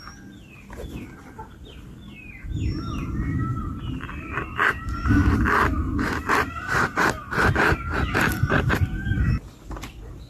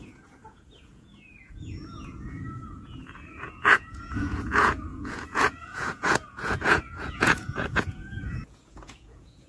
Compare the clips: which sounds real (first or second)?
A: first